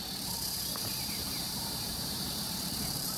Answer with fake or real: fake